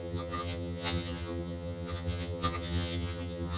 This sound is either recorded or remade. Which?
remade